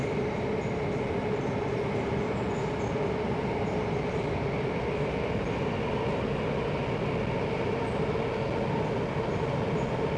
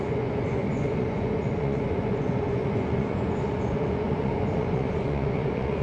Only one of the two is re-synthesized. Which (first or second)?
second